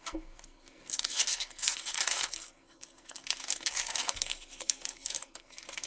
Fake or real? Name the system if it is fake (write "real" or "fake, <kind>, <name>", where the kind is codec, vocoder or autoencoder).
fake, codec, SNAC